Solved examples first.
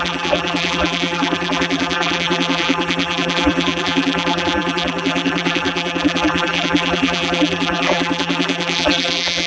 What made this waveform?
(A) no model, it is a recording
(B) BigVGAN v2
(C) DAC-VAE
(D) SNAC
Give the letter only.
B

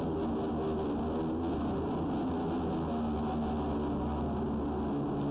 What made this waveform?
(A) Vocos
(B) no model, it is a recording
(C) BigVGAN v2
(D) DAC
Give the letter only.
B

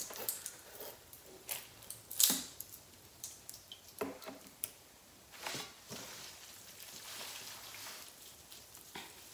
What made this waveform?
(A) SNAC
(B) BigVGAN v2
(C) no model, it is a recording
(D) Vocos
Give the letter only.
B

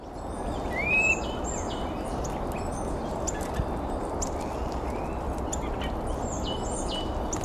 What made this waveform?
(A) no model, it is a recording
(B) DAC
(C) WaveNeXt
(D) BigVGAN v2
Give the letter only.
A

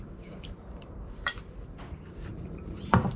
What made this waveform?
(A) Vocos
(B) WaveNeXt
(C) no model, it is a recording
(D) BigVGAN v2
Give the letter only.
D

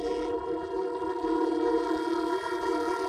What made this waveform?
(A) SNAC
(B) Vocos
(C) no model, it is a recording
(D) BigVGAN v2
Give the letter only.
D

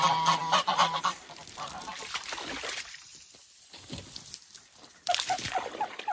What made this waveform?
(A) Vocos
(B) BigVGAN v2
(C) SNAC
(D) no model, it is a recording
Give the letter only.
B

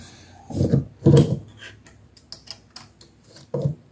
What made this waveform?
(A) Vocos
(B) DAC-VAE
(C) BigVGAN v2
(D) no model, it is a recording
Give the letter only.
D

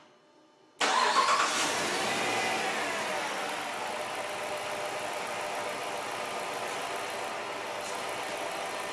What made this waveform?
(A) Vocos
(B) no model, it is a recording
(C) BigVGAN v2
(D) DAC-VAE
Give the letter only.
B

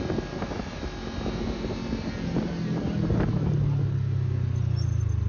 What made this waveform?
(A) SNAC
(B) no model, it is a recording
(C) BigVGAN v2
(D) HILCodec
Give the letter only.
B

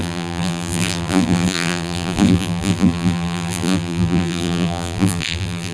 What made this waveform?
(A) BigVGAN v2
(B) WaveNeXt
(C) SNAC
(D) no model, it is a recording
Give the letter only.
A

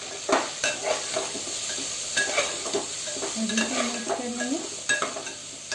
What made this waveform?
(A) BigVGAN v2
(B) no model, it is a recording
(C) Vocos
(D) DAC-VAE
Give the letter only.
B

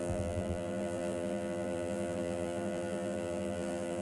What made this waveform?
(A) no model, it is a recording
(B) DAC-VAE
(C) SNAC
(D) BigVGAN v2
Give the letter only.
D